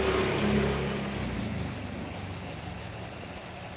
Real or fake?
real